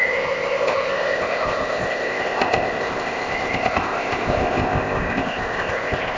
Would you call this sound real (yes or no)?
no